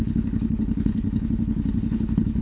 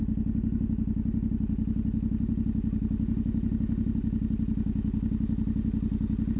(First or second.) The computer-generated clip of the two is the first